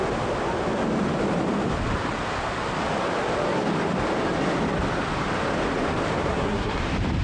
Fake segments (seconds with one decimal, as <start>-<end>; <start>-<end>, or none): 6.3-6.8

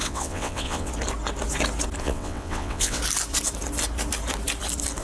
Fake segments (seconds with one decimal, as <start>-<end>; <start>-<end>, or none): 0.0-0.9; 2.0-3.0

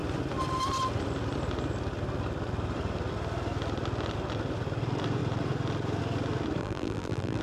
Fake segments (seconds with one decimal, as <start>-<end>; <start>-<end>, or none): 6.6-7.4

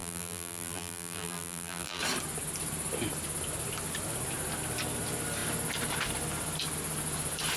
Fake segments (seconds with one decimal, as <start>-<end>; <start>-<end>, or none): 0.0-2.0

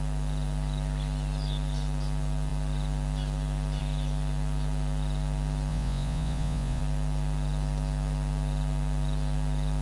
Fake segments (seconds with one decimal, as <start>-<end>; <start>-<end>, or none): 5.7-6.8

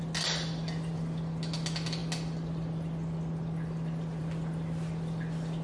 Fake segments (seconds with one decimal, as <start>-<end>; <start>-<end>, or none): none